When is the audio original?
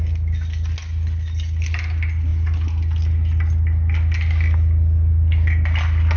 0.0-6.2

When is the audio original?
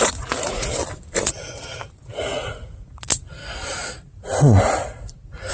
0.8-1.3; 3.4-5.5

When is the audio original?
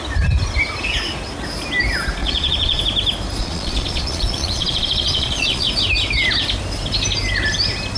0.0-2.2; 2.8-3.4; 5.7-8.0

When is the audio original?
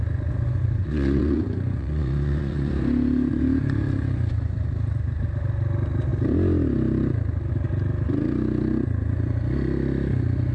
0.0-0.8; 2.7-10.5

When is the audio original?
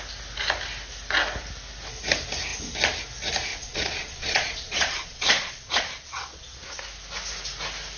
0.0-3.5; 6.8-8.0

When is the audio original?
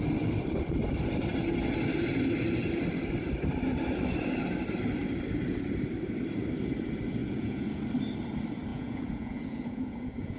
0.0-7.2; 7.8-8.7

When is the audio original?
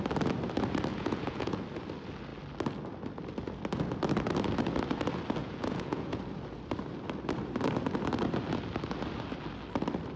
0.0-0.9; 1.6-5.4; 6.2-10.2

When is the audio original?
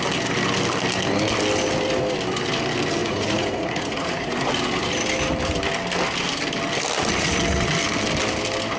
0.0-3.0; 4.5-8.8